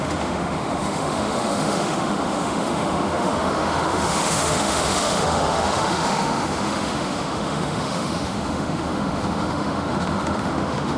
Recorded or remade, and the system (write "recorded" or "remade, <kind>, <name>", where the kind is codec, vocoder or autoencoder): remade, autoencoder, DAC-VAE